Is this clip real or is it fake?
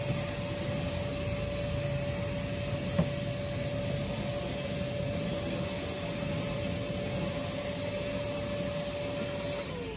real